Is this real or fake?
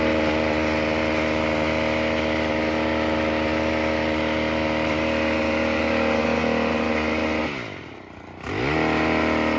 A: real